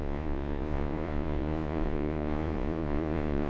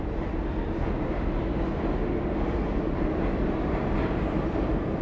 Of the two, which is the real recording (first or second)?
second